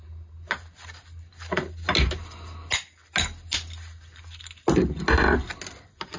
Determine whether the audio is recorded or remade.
recorded